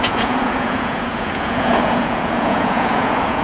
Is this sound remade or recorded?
remade